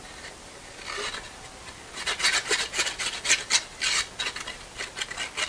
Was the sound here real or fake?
real